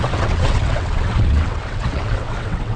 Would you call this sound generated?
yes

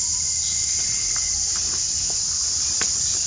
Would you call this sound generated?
no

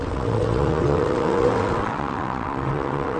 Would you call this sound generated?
yes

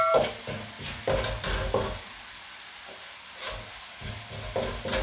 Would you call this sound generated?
no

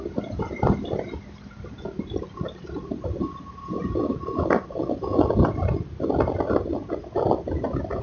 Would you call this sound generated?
no